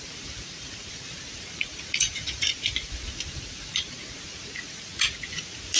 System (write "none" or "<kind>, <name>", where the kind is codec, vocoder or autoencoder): vocoder, Vocos